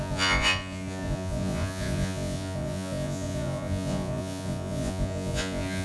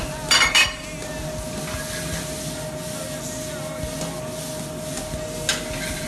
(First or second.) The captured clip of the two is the second